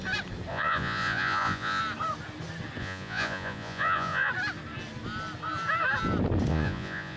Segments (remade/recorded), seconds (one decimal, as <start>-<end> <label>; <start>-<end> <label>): 0.0-0.5 recorded; 0.5-1.8 remade; 1.8-2.8 recorded; 2.8-4.3 remade; 4.3-6.5 recorded; 6.5-7.2 remade